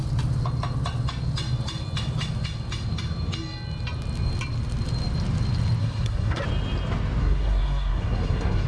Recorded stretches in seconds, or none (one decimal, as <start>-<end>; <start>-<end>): 0.0-5.8; 6.4-7.2